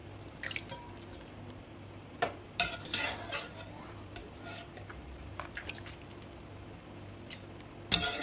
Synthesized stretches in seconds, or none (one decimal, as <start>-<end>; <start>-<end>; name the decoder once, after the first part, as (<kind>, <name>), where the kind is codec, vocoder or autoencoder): 0.0-3.5 (vocoder, BigVGAN v2); 4.2-5.7